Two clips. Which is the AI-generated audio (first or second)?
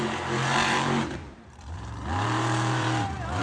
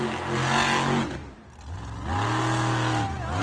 first